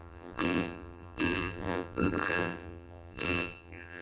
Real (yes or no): no